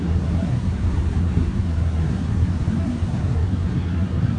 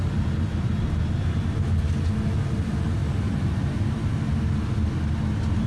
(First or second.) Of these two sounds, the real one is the second